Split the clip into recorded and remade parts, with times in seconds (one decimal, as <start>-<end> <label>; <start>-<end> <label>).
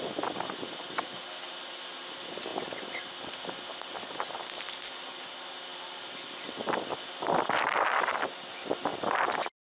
0.0-9.8 recorded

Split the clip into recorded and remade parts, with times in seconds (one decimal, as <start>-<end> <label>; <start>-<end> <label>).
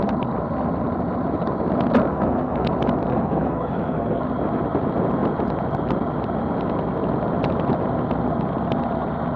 0.0-2.1 recorded; 2.1-2.7 remade; 2.7-3.1 recorded; 3.1-4.2 remade; 4.2-9.4 recorded